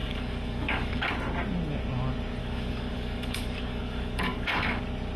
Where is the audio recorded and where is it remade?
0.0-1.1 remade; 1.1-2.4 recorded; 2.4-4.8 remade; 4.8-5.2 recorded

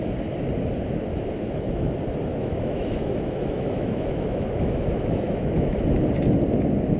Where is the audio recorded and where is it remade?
0.0-1.1 recorded; 1.1-1.9 remade; 1.9-2.3 recorded; 2.3-5.8 remade; 5.8-7.0 recorded

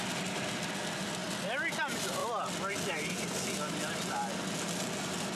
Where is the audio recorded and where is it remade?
0.0-5.3 recorded

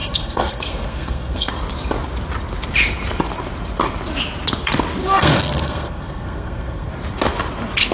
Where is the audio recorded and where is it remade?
0.0-1.5 remade; 1.5-5.0 recorded; 5.0-6.9 remade; 6.9-7.9 recorded

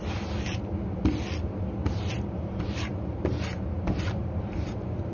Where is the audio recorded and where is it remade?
0.0-1.8 recorded; 1.8-5.1 remade